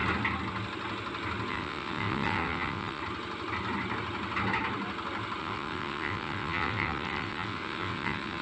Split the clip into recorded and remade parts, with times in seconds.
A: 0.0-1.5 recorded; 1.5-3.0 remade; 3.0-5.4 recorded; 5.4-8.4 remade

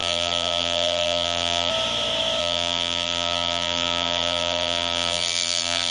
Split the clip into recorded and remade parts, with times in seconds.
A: 0.0-1.7 remade; 1.7-2.4 recorded; 2.4-5.9 remade

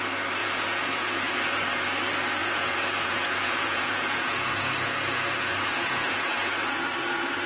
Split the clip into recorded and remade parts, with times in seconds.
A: 0.0-0.4 recorded; 0.4-1.3 remade; 1.3-2.4 recorded; 2.4-6.8 remade; 6.8-7.5 recorded

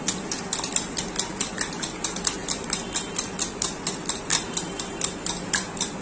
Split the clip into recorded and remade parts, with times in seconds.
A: 0.0-6.0 recorded

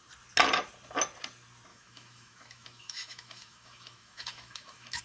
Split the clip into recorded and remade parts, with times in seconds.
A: 0.0-1.7 recorded; 1.7-5.0 remade

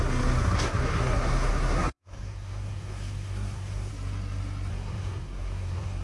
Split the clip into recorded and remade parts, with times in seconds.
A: 0.0-3.9 remade; 3.9-4.7 recorded; 4.7-6.0 remade

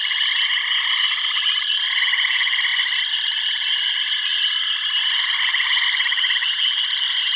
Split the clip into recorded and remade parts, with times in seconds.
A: 0.0-2.7 recorded; 2.7-3.4 remade; 3.4-4.3 recorded; 4.3-5.3 remade; 5.3-7.4 recorded

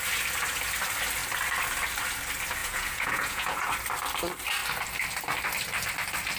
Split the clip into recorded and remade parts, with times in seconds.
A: 0.0-2.6 recorded; 2.6-3.7 remade; 3.7-6.4 recorded